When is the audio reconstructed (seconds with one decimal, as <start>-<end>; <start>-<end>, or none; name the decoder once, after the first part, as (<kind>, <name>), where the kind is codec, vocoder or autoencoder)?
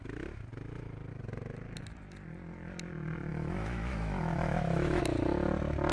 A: 3.3-5.0 (autoencoder, DAC-VAE)